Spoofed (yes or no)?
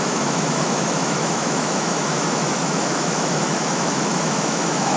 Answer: yes